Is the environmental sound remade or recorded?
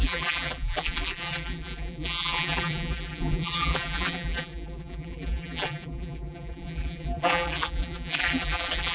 remade